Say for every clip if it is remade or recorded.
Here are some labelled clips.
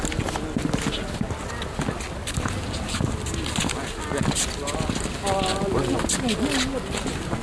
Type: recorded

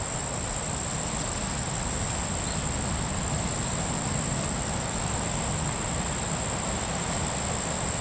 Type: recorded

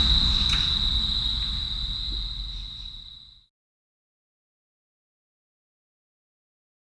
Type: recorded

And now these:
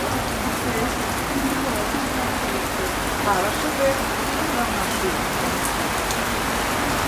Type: recorded